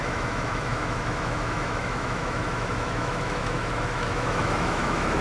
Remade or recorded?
remade